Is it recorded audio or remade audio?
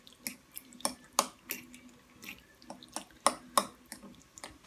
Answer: recorded